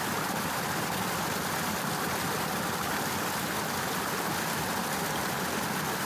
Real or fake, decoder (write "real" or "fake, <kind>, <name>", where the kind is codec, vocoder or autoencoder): real